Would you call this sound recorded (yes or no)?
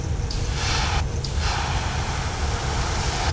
yes